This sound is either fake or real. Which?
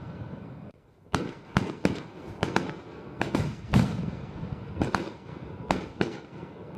fake